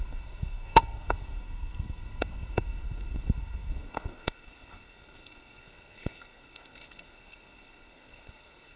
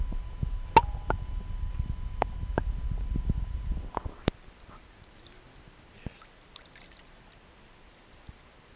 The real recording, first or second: second